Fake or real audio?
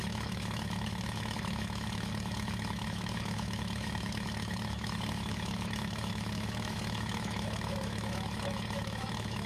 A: fake